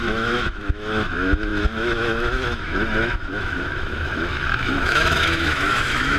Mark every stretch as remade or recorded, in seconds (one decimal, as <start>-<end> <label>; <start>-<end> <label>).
0.0-6.2 remade